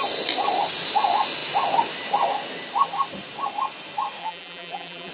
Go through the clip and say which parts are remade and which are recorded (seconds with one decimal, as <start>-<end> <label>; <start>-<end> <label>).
0.0-4.2 recorded; 4.2-5.1 remade